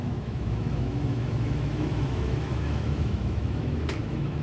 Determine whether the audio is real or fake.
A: fake